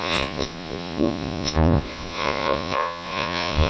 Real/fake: fake